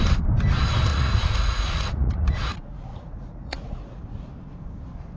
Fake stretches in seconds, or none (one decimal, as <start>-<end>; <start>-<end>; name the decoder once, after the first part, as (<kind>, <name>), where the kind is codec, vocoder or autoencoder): 0.9-4.0 (vocoder, Vocos)